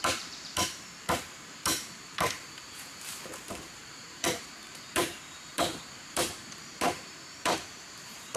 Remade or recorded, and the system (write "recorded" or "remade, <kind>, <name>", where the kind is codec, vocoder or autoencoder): remade, vocoder, BigVGAN v2